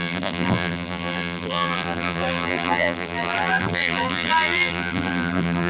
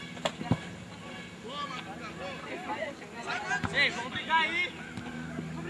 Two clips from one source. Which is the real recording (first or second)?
second